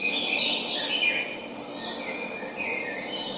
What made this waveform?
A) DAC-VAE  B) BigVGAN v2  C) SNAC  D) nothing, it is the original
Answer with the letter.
D